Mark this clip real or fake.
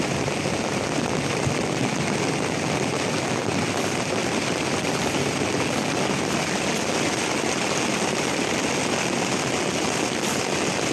real